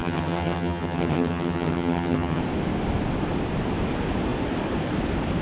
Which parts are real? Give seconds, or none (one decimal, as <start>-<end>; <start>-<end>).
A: 2.4-5.4